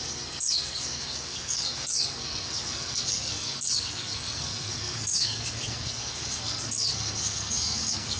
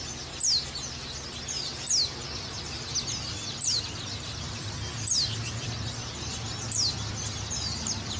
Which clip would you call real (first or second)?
second